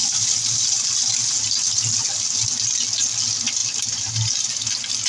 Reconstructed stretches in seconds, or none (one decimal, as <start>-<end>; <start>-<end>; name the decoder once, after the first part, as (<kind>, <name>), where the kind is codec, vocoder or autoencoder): none